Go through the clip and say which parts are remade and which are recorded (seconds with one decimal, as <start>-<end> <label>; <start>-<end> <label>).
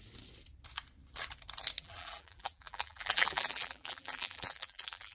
0.0-1.8 recorded; 1.8-5.1 remade